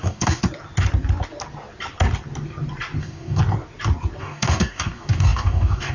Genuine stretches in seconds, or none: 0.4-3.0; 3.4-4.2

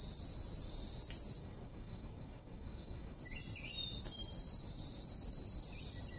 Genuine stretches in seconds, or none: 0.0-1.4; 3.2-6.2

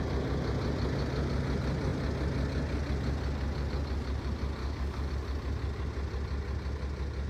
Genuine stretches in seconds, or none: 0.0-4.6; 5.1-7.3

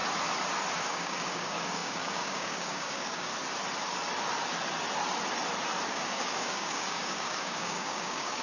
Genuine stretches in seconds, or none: 0.0-0.8; 3.3-5.9

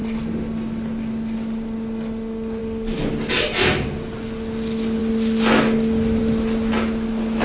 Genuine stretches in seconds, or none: 0.0-7.4

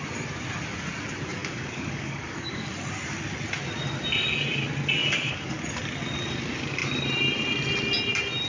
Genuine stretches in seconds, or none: 0.0-1.4; 2.7-5.0; 5.6-8.5

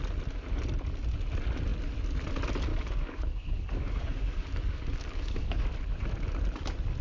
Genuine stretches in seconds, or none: 0.0-2.7; 5.7-7.0